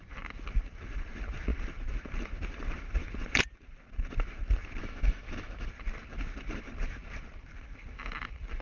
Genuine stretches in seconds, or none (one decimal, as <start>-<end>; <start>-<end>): 0.0-4.8; 5.7-8.6